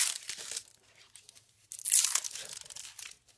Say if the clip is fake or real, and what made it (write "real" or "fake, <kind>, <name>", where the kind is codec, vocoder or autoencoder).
real